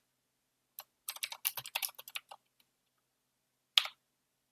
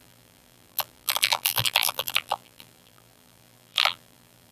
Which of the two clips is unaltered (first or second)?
first